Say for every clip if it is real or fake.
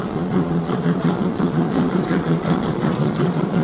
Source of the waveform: fake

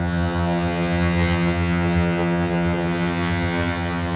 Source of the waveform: fake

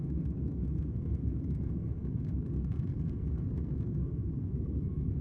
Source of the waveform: fake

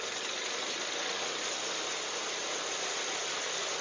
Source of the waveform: real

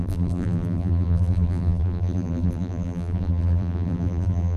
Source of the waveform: fake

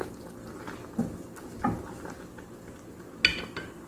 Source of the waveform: real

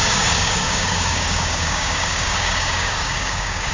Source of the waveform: fake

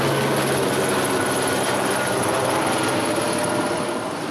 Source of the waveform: real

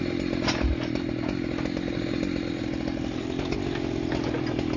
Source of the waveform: real